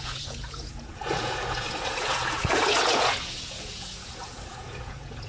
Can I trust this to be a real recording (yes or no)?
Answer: no